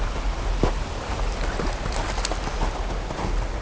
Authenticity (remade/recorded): recorded